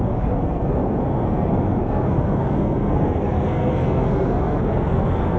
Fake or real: fake